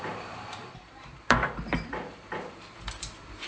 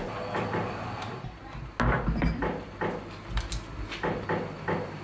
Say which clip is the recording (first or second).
second